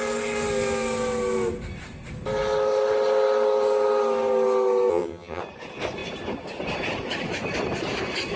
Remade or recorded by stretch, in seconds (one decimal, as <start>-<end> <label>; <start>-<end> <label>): 0.0-4.9 recorded; 4.9-5.4 remade; 5.4-8.4 recorded